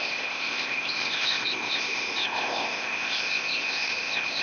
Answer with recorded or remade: remade